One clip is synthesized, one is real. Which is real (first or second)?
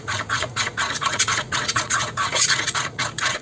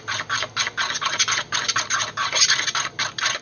second